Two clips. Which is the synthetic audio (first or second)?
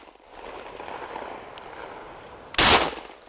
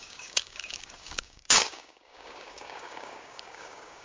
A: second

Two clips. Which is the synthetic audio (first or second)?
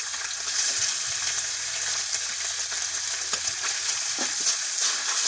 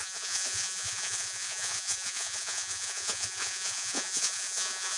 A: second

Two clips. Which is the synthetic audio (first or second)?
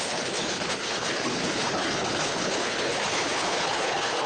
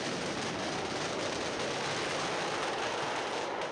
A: first